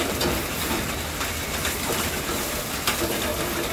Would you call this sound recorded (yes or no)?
yes